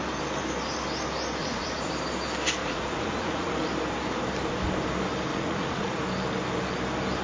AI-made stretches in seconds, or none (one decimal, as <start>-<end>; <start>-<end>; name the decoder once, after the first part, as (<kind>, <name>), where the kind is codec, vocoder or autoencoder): 1.4-1.9 (vocoder, Vocos); 2.6-3.5; 5.3-6.0